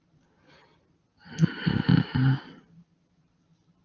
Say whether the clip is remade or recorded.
recorded